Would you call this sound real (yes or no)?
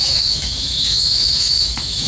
no